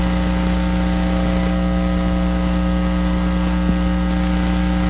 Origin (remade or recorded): recorded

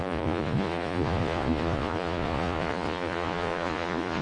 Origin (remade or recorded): remade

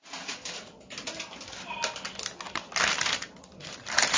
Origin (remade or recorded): recorded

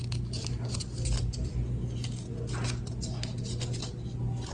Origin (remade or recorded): recorded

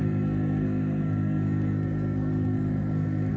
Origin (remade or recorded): remade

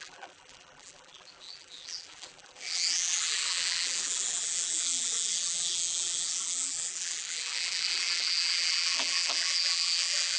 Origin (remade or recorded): remade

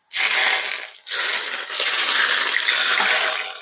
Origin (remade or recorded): recorded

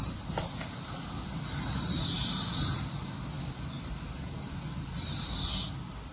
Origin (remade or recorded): remade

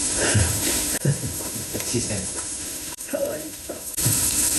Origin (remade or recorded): remade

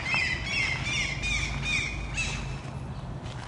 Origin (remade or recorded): recorded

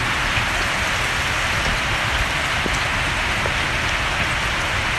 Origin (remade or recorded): recorded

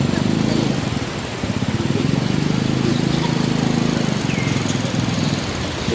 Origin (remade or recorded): recorded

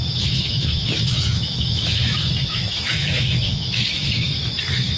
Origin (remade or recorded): remade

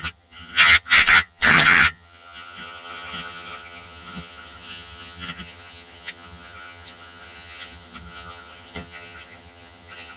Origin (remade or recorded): remade